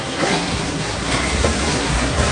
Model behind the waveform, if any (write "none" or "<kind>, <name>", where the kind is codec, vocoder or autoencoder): codec, SNAC